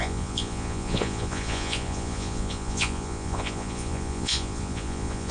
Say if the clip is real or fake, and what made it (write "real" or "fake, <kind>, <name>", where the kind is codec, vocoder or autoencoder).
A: fake, vocoder, Vocos